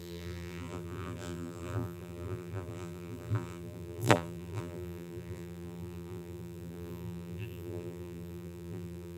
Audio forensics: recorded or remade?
remade